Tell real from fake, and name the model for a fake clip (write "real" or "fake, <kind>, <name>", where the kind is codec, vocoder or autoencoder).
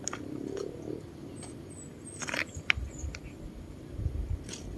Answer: real